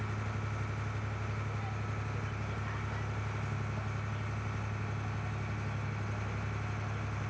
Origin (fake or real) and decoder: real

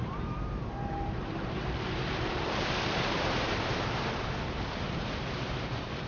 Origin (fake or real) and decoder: fake, vocoder, BigVGAN v2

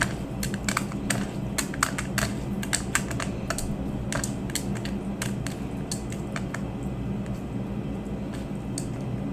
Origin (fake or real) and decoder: real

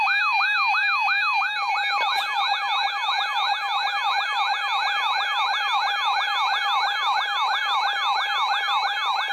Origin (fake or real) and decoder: real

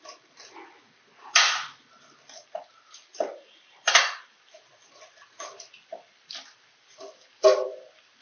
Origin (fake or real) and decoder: real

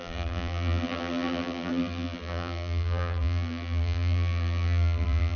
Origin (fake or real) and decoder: fake, vocoder, BigVGAN v2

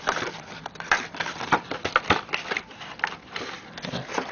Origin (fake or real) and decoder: fake, vocoder, BigVGAN v2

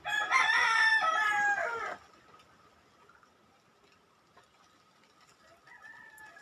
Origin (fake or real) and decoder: real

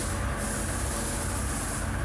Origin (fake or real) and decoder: real